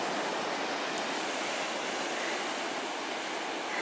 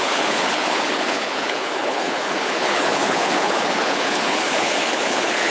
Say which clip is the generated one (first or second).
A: second